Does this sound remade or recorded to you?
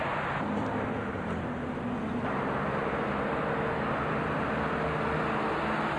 recorded